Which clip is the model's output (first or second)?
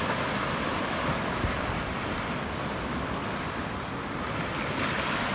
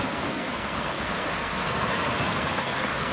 second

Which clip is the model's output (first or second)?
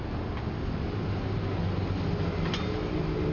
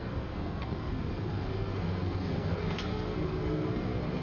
second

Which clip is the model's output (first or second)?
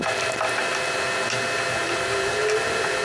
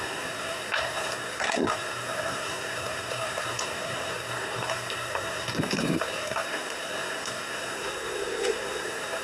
second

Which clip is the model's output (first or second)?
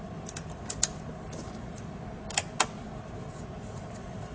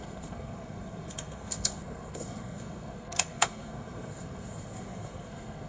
second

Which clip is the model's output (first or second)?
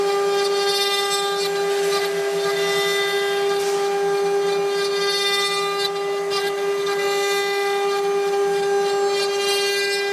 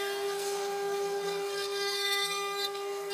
second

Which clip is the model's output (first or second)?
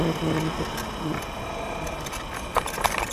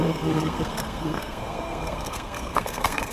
second